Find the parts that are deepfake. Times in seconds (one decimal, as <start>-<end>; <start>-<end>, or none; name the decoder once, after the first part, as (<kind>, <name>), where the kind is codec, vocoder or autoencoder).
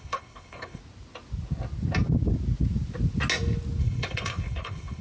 0.0-0.8 (codec, HILCodec); 3.8-5.0